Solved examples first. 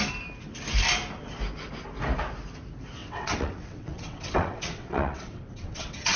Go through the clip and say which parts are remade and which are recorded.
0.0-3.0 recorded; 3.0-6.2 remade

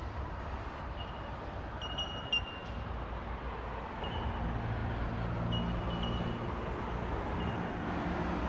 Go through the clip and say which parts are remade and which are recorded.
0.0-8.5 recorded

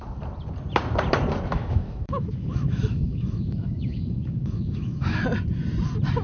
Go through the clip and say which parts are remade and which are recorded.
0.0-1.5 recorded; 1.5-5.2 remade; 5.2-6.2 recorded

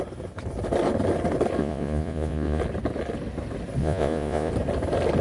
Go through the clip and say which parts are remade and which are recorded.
0.0-1.6 recorded; 1.6-2.6 remade; 2.6-3.8 recorded; 3.8-4.5 remade; 4.5-5.2 recorded

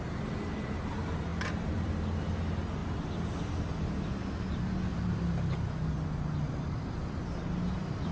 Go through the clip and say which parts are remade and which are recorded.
0.0-1.3 recorded; 1.3-2.0 remade; 2.0-2.8 recorded; 2.8-3.4 remade; 3.4-8.1 recorded

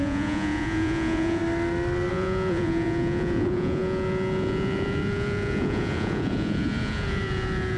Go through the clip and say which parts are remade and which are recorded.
0.0-1.4 remade; 1.4-2.1 recorded; 2.1-7.8 remade

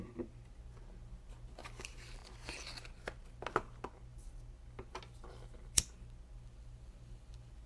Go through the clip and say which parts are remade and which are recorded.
0.0-7.7 recorded